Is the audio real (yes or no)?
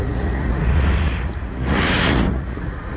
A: no